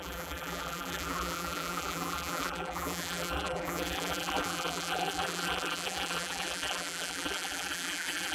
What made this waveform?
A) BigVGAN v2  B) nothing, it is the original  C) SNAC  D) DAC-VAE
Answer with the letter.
A